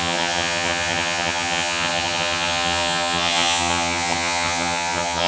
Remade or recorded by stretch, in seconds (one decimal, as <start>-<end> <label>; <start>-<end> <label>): 0.0-5.3 remade